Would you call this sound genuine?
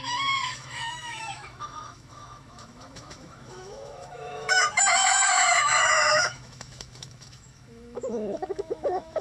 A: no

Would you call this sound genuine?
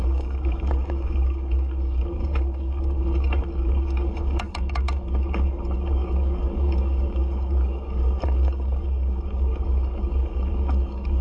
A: no